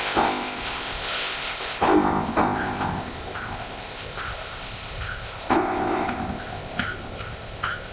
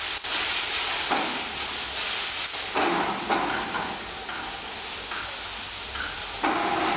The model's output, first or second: first